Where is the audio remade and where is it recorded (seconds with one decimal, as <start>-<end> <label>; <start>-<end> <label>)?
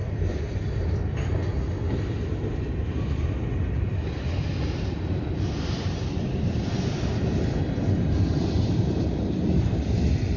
0.0-1.5 remade; 1.5-4.9 recorded; 4.9-10.4 remade